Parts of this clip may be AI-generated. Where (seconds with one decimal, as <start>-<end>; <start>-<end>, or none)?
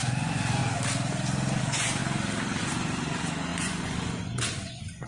0.0-0.6; 1.6-2.0; 2.6-5.1